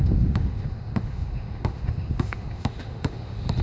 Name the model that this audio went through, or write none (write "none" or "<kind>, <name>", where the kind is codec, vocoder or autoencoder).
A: autoencoder, DAC-VAE